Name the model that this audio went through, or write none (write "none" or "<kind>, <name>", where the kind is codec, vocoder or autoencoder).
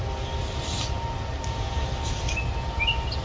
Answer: none